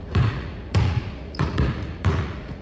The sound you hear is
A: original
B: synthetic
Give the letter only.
B